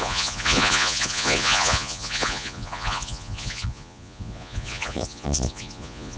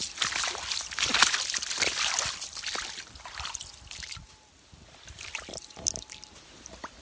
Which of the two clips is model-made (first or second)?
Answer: first